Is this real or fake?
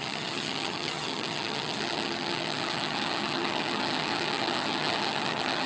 fake